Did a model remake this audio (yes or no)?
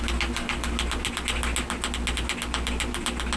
no